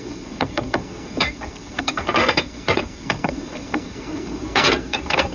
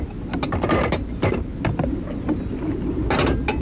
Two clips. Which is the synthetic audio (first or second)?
first